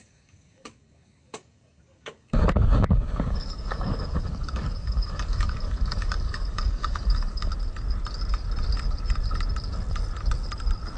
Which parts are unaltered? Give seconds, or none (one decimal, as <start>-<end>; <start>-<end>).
7.5-11.0